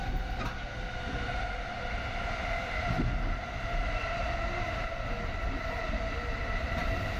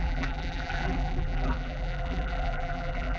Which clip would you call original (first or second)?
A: first